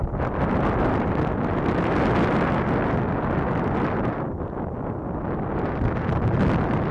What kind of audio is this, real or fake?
real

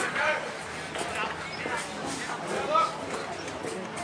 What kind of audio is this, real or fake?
real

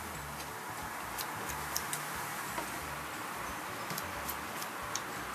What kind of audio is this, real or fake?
real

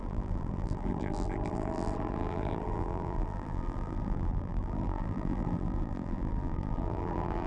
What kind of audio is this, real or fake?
fake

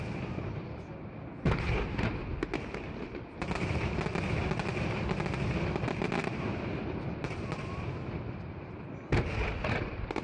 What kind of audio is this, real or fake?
real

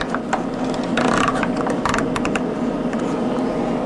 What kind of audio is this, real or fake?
real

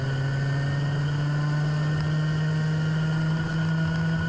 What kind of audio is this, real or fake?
real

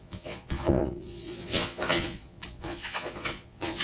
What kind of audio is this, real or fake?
fake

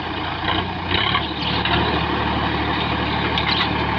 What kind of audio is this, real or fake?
real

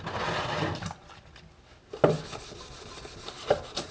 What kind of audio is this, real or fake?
real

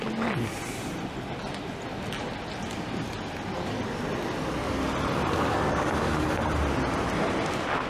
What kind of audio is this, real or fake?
real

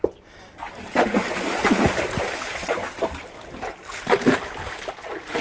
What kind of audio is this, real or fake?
real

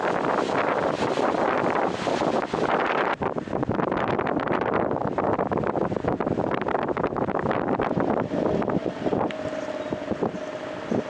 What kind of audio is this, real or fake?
fake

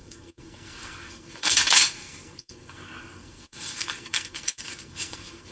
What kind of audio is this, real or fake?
fake